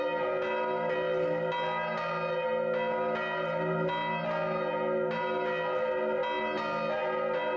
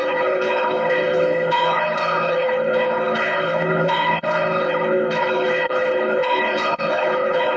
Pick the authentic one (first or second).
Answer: first